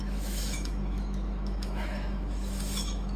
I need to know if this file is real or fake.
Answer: fake